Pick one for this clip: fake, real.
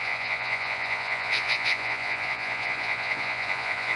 fake